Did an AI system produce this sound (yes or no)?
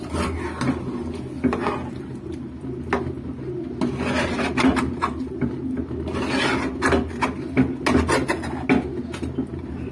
no